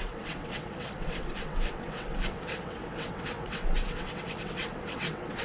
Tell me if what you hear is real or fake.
fake